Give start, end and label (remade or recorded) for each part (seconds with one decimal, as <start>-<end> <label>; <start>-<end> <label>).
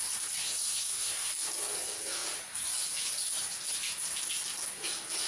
0.0-0.4 recorded; 0.4-1.3 remade; 1.3-5.3 recorded